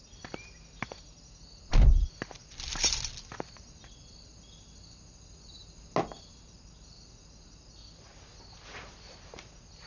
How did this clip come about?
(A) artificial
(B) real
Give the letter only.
B